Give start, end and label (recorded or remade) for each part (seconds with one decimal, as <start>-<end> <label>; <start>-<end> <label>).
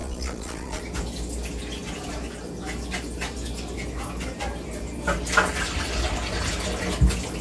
0.0-0.8 remade; 0.8-7.4 recorded